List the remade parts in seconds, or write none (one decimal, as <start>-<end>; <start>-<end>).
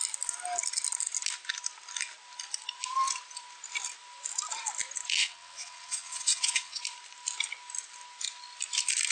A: 5.2-6.8